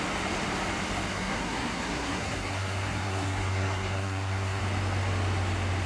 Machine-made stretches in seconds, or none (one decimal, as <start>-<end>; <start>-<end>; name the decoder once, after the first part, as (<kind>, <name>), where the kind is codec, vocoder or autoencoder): 1.1-4.6 (codec, SNAC)